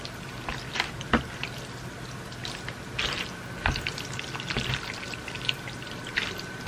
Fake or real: real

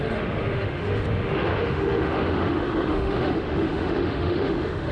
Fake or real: fake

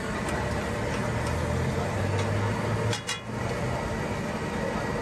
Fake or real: real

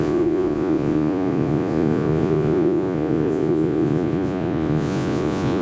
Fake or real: fake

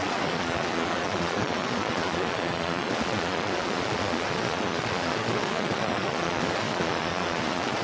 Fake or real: fake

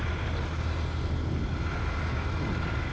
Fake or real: real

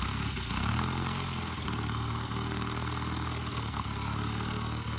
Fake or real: fake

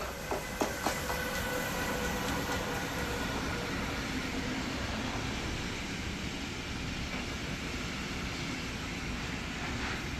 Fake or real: real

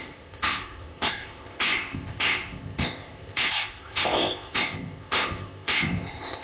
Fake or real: fake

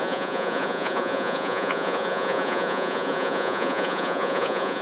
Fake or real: fake